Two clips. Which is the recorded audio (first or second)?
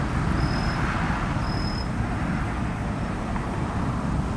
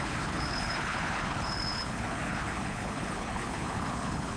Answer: first